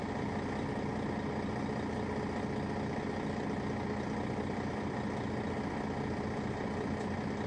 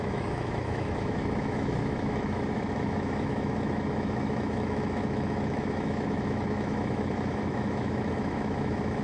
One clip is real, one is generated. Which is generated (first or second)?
second